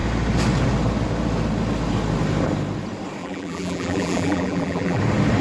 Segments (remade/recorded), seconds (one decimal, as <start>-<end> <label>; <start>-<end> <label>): 0.0-3.2 recorded; 3.2-5.0 remade; 5.0-5.4 recorded